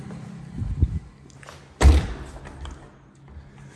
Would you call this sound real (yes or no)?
yes